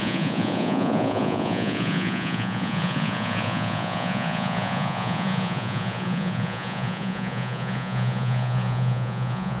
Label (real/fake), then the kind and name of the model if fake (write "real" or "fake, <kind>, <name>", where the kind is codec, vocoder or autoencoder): fake, vocoder, Vocos